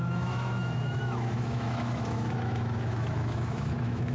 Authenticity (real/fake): fake